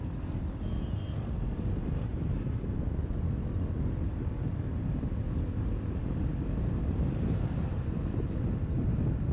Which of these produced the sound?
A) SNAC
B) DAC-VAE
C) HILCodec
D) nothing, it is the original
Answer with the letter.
D